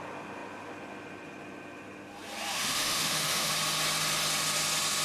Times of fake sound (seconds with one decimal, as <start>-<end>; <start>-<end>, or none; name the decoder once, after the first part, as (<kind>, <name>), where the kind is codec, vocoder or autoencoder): 2.5-3.5 (autoencoder, DAC-VAE)

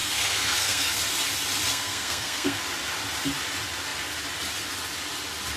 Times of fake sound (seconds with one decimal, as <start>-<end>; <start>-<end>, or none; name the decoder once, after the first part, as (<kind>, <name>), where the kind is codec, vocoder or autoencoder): 0.0-1.0 (codec, SNAC); 1.7-2.6

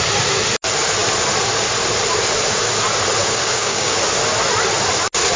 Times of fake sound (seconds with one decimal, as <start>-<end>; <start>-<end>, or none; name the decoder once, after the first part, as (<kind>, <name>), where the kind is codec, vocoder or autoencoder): 3.2-4.0 (codec, DAC)

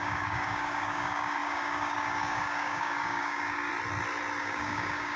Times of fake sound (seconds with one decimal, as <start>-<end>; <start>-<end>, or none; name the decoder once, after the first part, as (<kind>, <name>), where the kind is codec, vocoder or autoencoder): 0.0-3.7 (codec, DAC); 4.4-5.2

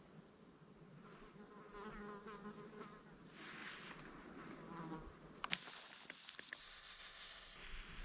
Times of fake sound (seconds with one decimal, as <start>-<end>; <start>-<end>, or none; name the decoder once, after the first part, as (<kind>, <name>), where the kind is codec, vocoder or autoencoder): 6.6-8.0 (codec, ZipCodec)

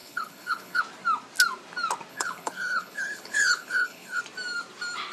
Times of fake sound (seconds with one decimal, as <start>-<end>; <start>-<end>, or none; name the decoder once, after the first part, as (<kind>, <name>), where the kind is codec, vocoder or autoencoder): 0.0-0.8 (codec, HILCodec); 2.1-4.2

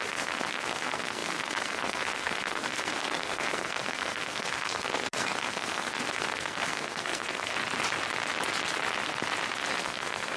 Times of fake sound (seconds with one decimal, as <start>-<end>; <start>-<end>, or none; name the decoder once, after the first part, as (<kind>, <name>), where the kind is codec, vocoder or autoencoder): 0.0-7.5 (codec, SNAC); 9.8-10.4